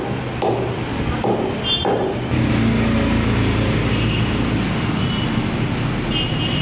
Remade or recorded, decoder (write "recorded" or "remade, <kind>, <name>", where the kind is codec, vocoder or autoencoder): recorded